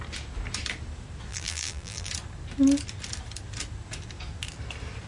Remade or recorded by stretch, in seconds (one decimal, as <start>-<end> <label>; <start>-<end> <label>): 0.0-1.3 recorded; 1.3-2.1 remade; 2.1-5.1 recorded